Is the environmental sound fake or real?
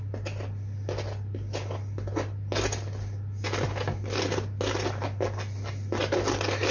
real